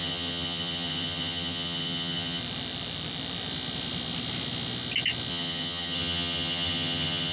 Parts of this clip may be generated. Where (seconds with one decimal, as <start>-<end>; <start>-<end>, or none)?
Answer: 0.0-2.4; 5.3-7.3